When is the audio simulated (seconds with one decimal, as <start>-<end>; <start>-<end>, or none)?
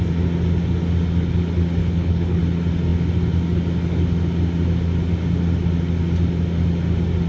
1.8-2.4